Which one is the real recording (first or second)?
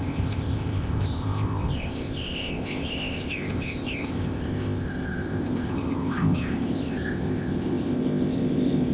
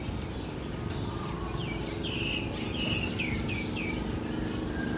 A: second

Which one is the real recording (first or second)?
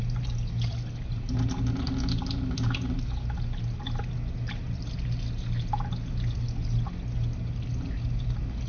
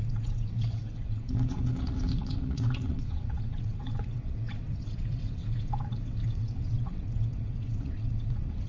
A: first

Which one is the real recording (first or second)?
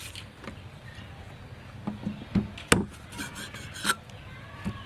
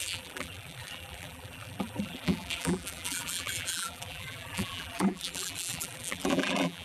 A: first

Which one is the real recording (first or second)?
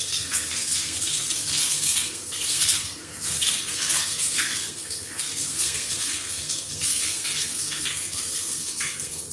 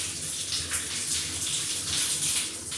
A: second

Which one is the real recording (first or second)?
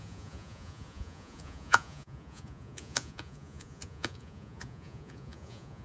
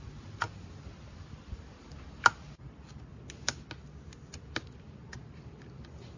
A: second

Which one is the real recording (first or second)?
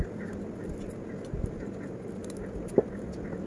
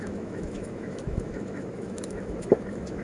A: first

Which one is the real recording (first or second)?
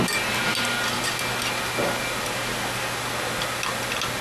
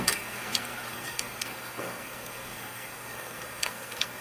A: first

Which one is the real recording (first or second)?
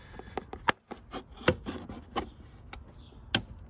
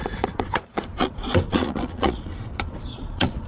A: first